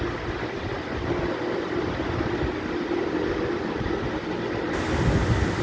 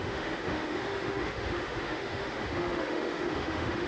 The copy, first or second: second